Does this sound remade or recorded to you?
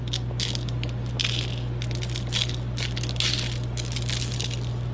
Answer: recorded